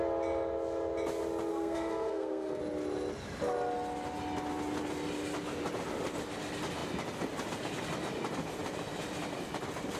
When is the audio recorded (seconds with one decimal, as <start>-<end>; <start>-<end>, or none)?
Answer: 0.0-1.5; 2.6-10.0

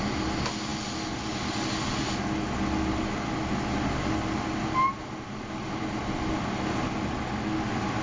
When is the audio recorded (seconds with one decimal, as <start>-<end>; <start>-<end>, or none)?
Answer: 0.0-8.0

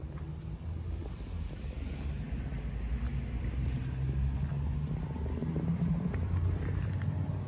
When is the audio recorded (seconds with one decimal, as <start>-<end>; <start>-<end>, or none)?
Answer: 0.0-5.4; 6.9-7.5

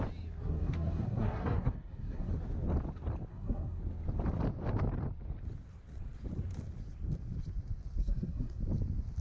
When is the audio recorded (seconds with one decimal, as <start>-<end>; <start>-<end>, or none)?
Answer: 0.0-0.4; 2.3-3.3; 3.8-8.0; 8.6-9.2